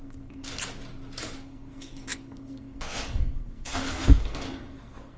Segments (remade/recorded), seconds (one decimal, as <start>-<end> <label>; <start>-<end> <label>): 0.0-0.5 remade; 0.5-1.2 recorded; 1.2-5.2 remade